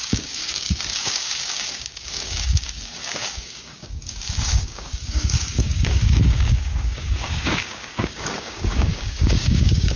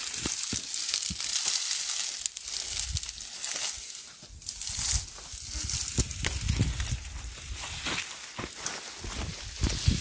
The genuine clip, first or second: second